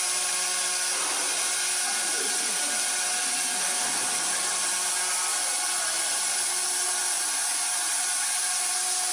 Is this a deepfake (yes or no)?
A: no